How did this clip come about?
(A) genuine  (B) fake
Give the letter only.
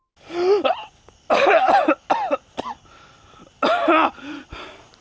A